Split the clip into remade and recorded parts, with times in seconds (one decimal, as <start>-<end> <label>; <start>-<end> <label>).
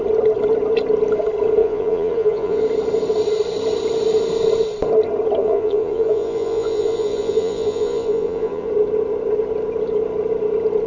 0.0-1.6 recorded; 1.6-2.6 remade; 2.6-5.4 recorded; 5.4-8.7 remade; 8.7-10.9 recorded